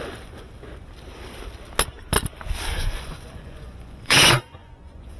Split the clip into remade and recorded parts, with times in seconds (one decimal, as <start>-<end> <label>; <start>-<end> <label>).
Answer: 0.0-0.9 remade; 0.9-2.7 recorded; 2.7-5.2 remade